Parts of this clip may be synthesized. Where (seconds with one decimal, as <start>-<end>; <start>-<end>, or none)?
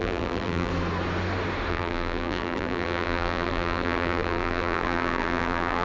0.0-0.7; 1.7-5.8